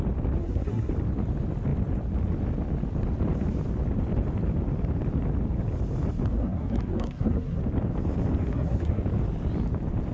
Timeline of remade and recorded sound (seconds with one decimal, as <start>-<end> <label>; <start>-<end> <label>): 0.0-0.4 recorded; 0.4-0.9 remade; 0.9-6.3 recorded; 6.3-7.6 remade; 7.6-8.4 recorded; 8.4-9.0 remade; 9.0-10.1 recorded